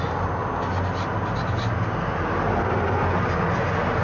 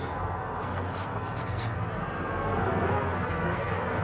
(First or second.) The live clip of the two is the first